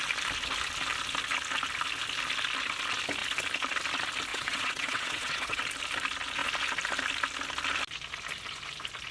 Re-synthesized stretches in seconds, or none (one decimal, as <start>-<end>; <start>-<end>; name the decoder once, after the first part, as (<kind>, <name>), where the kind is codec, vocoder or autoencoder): 4.3-5.6 (vocoder, WaveNeXt)